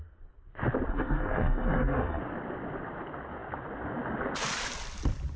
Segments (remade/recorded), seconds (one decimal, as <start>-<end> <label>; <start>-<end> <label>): 0.0-0.9 recorded; 0.9-2.2 remade; 2.2-5.4 recorded